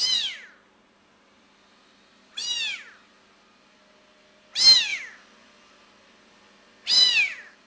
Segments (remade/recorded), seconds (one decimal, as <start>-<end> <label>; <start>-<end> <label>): 0.0-7.7 recorded